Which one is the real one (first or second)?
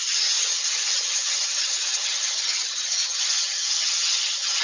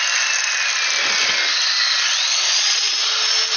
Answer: second